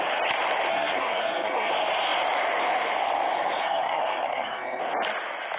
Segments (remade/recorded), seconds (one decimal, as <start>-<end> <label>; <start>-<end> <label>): 0.0-0.7 recorded; 0.7-1.7 remade; 1.7-3.6 recorded; 3.6-4.8 remade; 4.8-5.6 recorded